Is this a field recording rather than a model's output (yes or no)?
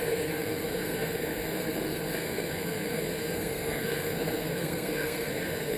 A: no